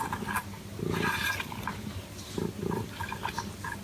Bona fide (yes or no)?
yes